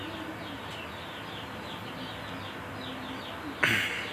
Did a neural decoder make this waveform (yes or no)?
no